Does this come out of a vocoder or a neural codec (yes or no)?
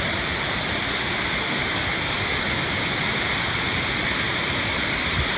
no